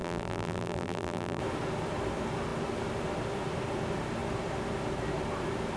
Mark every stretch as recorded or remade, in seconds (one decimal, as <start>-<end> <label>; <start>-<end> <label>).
0.0-1.4 remade; 1.4-5.8 recorded

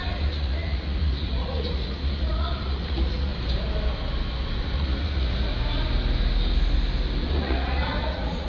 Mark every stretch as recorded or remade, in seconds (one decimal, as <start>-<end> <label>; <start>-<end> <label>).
0.0-3.3 remade; 3.3-4.6 recorded; 4.6-5.5 remade; 5.5-7.3 recorded; 7.3-8.5 remade

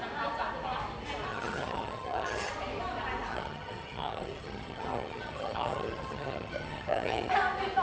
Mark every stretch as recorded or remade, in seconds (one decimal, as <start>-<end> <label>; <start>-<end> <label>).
0.0-1.3 recorded; 1.3-2.5 remade; 2.5-3.3 recorded; 3.3-7.3 remade; 7.3-7.8 recorded

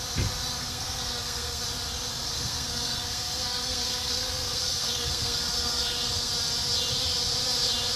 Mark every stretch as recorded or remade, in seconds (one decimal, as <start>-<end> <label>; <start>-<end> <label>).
0.0-0.6 recorded; 0.6-1.6 remade; 1.6-2.1 recorded; 2.1-6.3 remade; 6.3-8.0 recorded

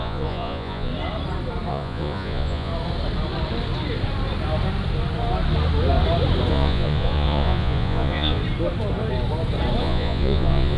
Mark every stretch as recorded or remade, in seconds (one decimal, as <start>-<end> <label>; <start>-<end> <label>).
0.0-0.9 remade; 0.9-1.7 recorded; 1.7-2.7 remade; 2.7-6.5 recorded; 6.5-8.4 remade; 8.4-9.8 recorded; 9.8-10.8 remade

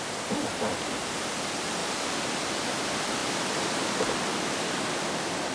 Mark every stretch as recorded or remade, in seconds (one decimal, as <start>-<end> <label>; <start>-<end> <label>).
0.0-1.8 remade; 1.8-2.8 recorded; 2.8-3.2 remade; 3.2-5.5 recorded